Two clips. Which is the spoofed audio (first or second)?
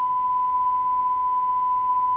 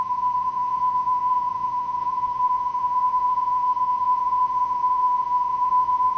second